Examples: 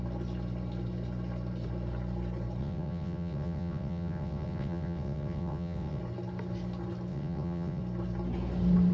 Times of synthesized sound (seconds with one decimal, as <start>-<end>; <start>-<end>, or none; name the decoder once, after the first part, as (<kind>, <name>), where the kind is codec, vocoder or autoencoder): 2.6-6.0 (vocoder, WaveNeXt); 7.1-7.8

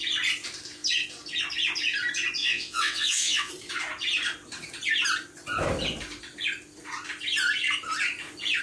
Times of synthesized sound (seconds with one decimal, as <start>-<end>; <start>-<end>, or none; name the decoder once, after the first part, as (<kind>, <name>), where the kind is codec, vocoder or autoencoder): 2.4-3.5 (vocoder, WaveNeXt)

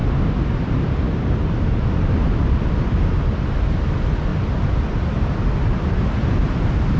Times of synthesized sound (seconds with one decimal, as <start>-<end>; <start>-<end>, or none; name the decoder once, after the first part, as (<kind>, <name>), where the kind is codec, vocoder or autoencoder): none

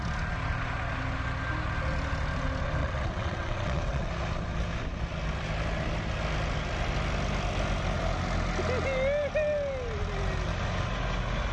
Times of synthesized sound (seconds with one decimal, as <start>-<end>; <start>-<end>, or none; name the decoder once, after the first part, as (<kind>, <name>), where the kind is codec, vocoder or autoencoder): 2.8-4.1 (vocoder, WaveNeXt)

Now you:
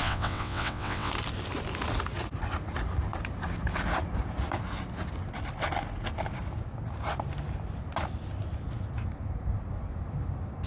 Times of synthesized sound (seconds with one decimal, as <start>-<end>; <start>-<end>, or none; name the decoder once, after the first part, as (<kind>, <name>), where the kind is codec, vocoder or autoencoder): 0.0-1.1 (vocoder, WaveNeXt)

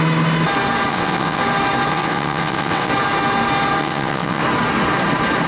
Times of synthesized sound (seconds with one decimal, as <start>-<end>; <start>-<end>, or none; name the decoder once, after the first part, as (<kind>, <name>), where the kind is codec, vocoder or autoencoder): 0.9-1.4 (vocoder, WaveNeXt); 1.9-2.9; 3.8-4.4

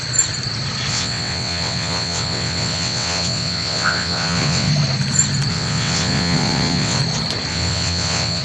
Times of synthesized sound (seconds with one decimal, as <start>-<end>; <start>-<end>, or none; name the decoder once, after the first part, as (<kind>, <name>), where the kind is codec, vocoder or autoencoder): 0.9-4.7 (vocoder, WaveNeXt); 5.5-7.0; 7.5-8.4